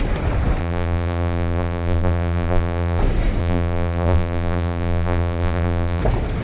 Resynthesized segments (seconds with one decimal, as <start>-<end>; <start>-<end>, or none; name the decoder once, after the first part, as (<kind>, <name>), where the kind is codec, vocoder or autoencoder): 0.6-3.0 (vocoder, BigVGAN v2); 3.4-6.0